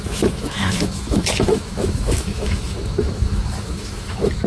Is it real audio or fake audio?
fake